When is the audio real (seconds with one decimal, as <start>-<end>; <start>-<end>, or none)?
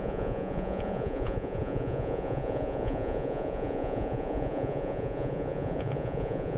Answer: none